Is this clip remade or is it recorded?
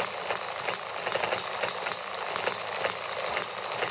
recorded